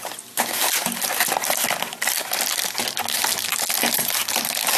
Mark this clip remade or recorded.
recorded